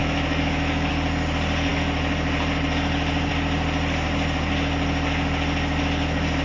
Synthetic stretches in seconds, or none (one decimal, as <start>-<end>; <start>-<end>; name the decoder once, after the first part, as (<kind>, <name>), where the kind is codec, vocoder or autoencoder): 0.0-0.9 (autoencoder, DAC-VAE)